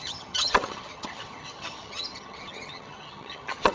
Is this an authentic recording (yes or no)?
no